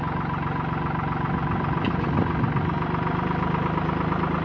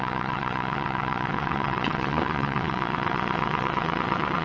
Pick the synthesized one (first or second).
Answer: second